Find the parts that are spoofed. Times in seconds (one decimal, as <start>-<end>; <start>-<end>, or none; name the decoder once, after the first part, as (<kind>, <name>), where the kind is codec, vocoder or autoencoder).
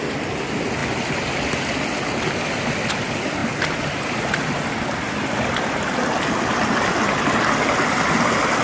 none